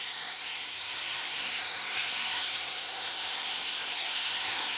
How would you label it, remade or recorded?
remade